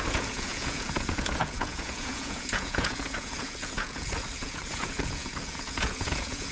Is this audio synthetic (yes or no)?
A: yes